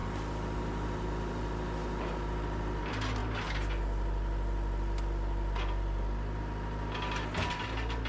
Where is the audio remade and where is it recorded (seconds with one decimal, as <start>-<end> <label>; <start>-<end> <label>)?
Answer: 0.0-8.1 recorded